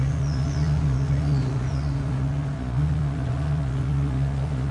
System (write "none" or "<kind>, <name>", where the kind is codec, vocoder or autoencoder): vocoder, Vocos